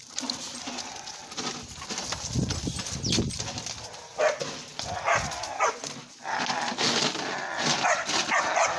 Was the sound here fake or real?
real